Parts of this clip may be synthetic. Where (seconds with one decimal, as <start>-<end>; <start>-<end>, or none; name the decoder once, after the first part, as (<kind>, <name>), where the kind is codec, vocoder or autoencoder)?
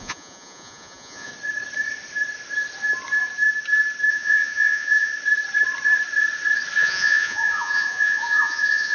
0.0-1.3 (vocoder, Vocos); 4.1-5.1; 6.8-8.9